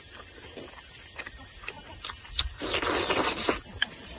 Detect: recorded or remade recorded